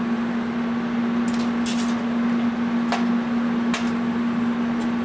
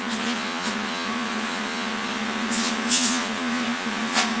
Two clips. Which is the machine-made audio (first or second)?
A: second